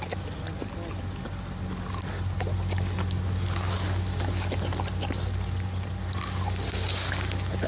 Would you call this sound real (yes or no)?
yes